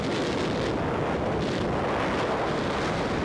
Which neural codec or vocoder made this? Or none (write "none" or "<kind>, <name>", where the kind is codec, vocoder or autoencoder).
none